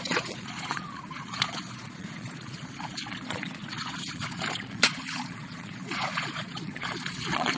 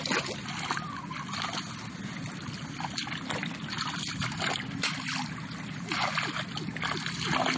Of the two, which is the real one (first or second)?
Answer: second